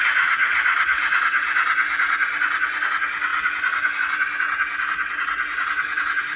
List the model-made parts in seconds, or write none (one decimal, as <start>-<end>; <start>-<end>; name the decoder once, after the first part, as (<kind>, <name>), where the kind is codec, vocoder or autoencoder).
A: none